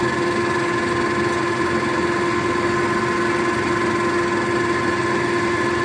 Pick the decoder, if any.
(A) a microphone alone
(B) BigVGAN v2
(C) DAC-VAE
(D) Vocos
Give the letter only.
A